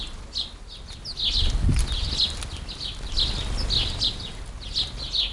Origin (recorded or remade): recorded